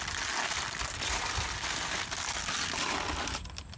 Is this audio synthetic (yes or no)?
no